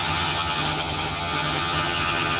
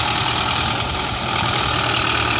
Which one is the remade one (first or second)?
first